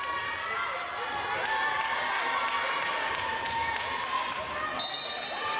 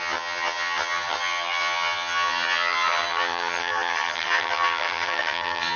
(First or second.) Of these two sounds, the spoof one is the second